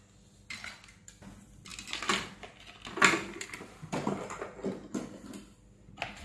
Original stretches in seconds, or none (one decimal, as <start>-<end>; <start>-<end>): 0.0-6.2